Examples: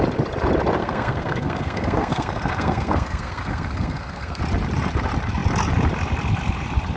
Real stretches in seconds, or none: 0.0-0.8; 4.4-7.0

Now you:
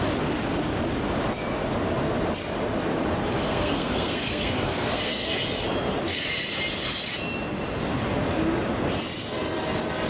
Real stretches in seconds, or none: 0.0-3.3; 5.3-10.1

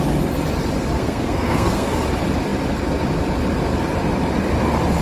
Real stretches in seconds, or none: 0.0-1.0; 2.0-5.0

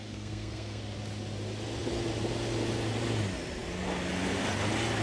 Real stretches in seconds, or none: 0.8-5.0

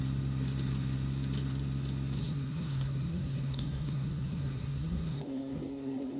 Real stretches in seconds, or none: 0.0-2.2

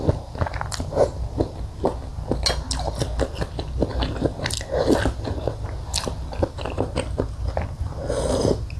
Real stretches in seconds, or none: 0.0-8.8

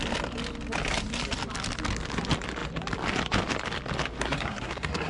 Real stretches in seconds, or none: 0.0-4.2